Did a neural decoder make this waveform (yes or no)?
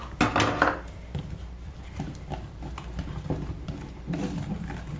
no